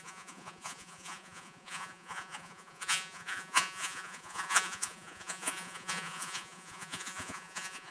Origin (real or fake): fake